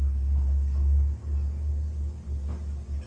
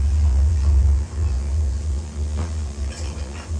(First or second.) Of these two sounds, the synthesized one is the second